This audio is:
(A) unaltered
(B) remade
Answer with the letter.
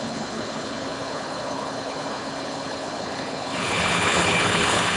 B